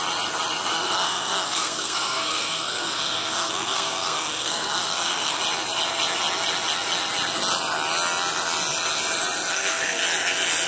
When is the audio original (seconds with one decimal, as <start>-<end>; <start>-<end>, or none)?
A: 0.0-0.7; 5.4-9.5; 10.0-10.7